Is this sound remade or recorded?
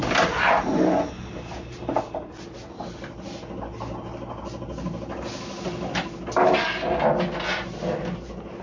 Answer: recorded